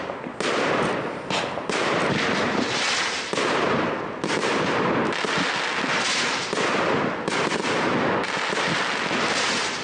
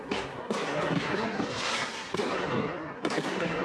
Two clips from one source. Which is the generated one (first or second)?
second